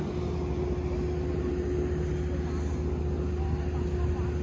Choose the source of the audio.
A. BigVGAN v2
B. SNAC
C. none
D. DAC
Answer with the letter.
C